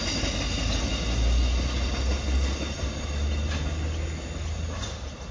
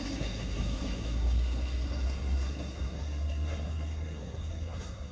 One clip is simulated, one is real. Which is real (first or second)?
first